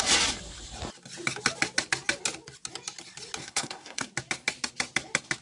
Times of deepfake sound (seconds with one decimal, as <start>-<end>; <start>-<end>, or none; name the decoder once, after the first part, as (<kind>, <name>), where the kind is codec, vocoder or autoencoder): 3.4-4.1 (codec, SNAC)